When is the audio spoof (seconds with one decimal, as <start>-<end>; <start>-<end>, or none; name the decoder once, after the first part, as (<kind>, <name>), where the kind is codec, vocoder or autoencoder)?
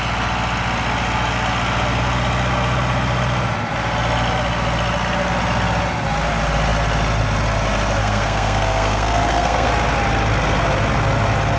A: 8.0-9.7 (codec, SNAC)